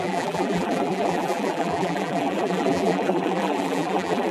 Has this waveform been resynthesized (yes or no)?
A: yes